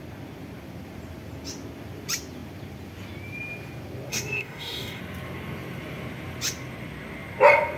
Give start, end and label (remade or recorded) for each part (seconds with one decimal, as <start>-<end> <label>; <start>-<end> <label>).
0.0-4.1 recorded; 4.1-5.0 remade; 5.0-7.8 recorded